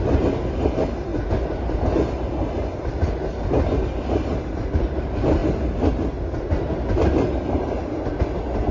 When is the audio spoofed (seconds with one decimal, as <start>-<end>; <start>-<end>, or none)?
none